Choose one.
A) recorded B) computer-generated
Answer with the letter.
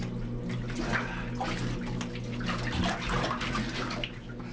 A